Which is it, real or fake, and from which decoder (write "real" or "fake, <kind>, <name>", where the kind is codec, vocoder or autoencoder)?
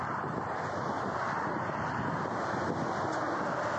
real